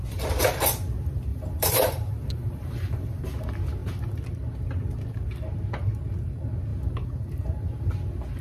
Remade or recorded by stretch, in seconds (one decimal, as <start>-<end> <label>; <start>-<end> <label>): 0.0-1.3 recorded; 1.3-3.2 remade; 3.2-6.7 recorded; 6.7-7.9 remade; 7.9-8.4 recorded